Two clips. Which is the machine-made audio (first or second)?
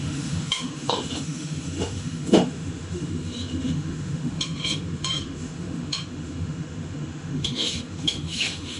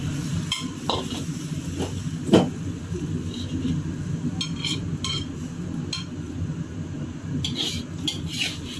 first